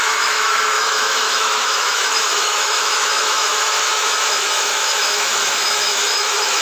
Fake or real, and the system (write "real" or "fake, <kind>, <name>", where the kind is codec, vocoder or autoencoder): fake, autoencoder, DAC-VAE